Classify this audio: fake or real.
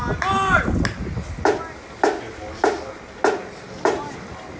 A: real